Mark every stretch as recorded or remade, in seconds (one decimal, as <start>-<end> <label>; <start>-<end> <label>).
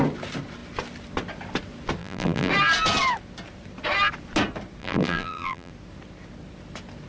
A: 0.0-2.0 recorded; 2.0-2.5 remade; 2.5-4.8 recorded; 4.8-5.7 remade; 5.7-7.1 recorded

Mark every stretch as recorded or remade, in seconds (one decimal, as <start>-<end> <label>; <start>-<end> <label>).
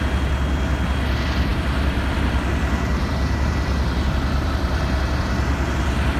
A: 0.0-1.5 recorded; 1.5-2.5 remade; 2.5-2.9 recorded; 2.9-5.3 remade; 5.3-6.2 recorded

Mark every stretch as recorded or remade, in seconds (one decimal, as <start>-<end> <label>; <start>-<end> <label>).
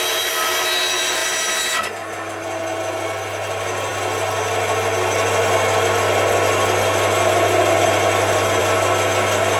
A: 0.0-9.6 recorded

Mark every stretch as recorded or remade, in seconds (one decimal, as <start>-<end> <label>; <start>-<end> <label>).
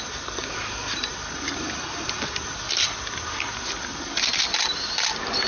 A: 0.0-5.5 recorded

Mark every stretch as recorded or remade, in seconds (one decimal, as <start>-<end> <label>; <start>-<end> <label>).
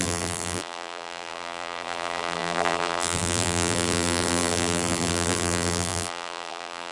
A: 0.0-6.9 remade